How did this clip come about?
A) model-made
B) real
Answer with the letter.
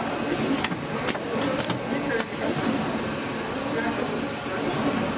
B